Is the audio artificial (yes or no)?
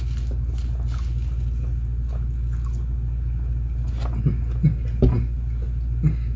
no